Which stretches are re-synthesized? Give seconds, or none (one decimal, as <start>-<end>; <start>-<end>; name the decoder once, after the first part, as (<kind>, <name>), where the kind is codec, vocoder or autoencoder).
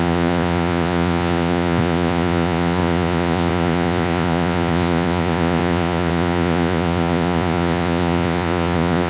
0.0-9.1 (vocoder, Vocos)